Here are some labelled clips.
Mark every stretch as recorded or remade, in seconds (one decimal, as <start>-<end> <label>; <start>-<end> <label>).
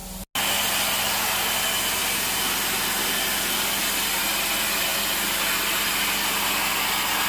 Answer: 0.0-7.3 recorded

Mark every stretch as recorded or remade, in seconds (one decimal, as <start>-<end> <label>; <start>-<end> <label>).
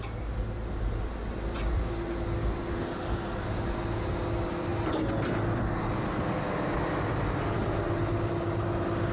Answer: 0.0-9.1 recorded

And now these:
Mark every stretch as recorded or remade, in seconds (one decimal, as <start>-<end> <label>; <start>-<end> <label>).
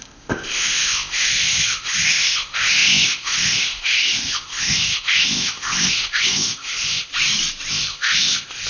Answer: 0.0-7.1 remade; 7.1-7.7 recorded; 7.7-8.7 remade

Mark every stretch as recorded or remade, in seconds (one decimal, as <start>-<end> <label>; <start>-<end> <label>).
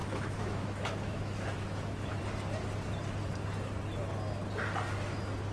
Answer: 0.0-2.2 remade; 2.2-5.5 recorded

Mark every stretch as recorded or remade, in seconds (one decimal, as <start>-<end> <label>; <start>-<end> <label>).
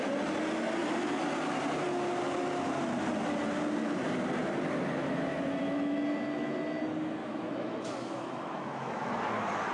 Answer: 0.0-5.0 recorded; 5.0-6.8 remade; 6.8-7.2 recorded; 7.2-9.1 remade; 9.1-9.7 recorded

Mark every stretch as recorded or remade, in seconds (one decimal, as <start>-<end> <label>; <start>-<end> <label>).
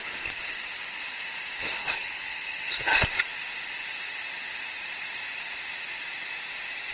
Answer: 0.0-1.8 recorded; 1.8-2.7 remade; 2.7-6.9 recorded